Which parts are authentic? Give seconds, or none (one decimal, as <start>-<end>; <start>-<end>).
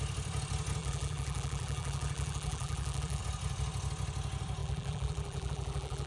0.0-0.8; 3.2-4.6